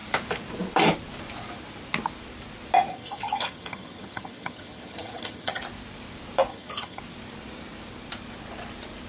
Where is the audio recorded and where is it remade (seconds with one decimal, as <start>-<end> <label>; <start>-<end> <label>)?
0.0-2.9 recorded; 2.9-5.6 remade; 5.6-6.5 recorded; 6.5-7.0 remade; 7.0-9.1 recorded